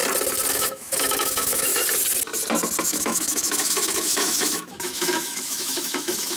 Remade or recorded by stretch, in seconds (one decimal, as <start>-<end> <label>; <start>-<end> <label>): 0.0-0.5 recorded; 0.5-1.7 remade; 1.7-2.8 recorded; 2.8-6.4 remade